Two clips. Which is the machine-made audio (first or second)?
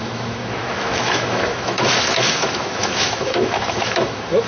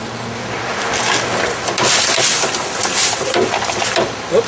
first